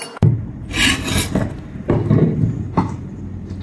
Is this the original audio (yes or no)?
yes